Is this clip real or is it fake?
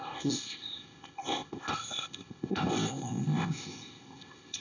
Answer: fake